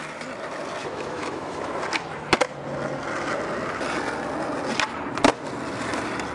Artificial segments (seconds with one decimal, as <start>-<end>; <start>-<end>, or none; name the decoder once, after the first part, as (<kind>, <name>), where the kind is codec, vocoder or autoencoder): 0.8-1.7 (autoencoder, DAC-VAE)